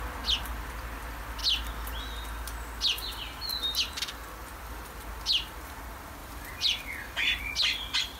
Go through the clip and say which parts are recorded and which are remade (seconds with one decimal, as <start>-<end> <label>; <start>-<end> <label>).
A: 0.0-4.4 recorded; 4.4-5.1 remade; 5.1-6.2 recorded; 6.2-7.5 remade; 7.5-8.2 recorded